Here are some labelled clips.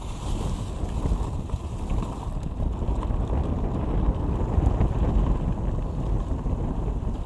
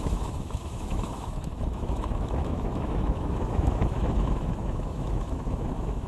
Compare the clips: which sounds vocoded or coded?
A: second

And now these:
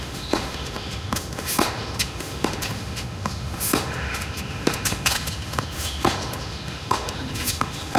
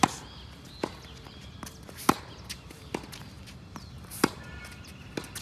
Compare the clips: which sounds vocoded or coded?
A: first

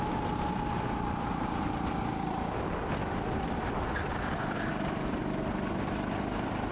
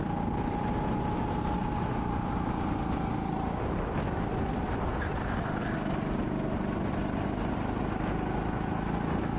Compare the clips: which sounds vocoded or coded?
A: first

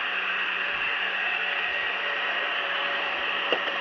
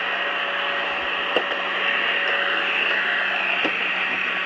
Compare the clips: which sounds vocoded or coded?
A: first